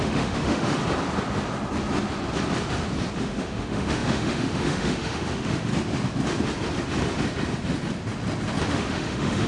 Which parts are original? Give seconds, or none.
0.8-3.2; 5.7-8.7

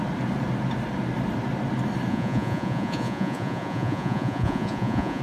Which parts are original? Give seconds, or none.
0.0-2.1

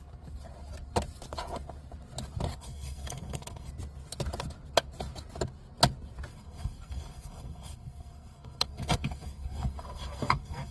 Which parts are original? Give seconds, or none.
0.0-2.5; 3.7-6.3

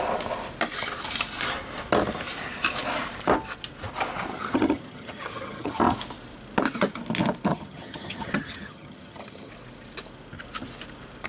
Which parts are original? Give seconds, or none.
0.0-4.3; 5.8-7.5; 9.5-11.3

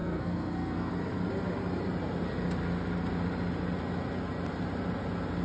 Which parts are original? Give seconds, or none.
0.9-5.4

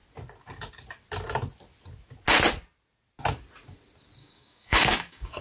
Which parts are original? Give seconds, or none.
0.0-4.2

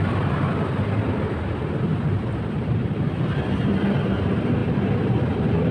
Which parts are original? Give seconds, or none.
none